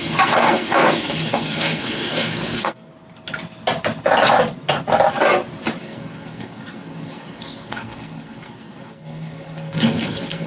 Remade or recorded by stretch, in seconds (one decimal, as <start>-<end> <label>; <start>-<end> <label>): 0.0-2.9 remade; 2.9-5.8 recorded; 5.8-10.5 remade